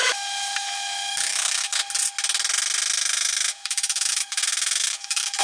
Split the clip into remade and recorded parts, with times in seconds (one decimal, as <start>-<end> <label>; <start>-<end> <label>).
0.0-1.8 remade; 1.8-3.0 recorded; 3.0-5.4 remade